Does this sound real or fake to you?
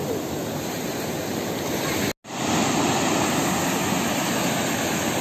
real